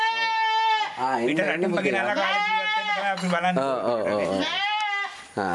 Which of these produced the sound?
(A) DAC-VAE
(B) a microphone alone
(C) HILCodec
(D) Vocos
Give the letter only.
B